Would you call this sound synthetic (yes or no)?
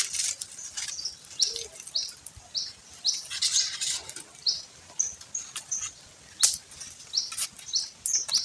no